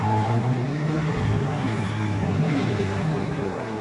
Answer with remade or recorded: remade